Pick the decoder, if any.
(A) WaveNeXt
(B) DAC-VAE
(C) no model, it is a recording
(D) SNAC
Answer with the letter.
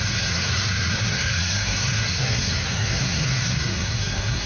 D